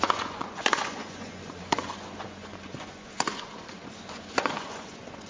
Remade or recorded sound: remade